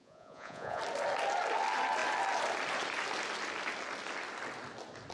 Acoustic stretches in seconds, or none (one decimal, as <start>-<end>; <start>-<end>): 0.8-5.1